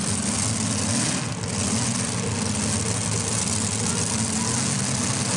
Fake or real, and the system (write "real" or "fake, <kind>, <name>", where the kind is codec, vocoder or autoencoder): real